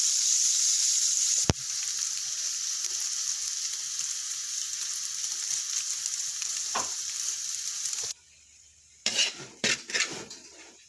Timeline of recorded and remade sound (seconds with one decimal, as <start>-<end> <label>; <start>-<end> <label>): 0.0-1.8 remade; 1.8-6.3 recorded; 6.3-10.9 remade